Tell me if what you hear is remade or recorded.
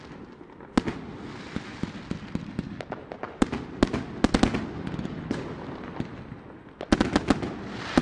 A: recorded